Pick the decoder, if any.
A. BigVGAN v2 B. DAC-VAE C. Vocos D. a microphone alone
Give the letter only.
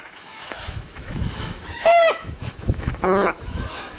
B